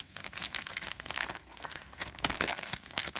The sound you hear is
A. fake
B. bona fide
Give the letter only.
A